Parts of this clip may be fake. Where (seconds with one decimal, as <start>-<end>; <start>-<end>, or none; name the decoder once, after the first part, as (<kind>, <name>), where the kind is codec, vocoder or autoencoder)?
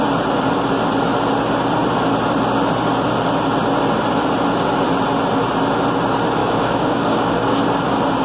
6.4-7.6 (codec, DAC)